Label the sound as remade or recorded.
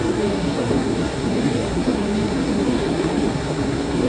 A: remade